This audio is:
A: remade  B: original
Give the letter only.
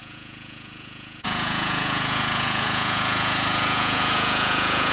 A